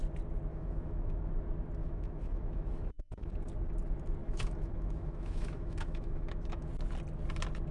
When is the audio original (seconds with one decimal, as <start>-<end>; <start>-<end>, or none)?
0.0-0.5; 1.3-1.8; 3.3-4.2; 6.7-7.7